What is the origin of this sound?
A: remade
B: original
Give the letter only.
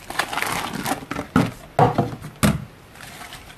B